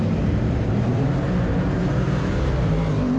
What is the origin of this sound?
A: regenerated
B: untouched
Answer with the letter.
A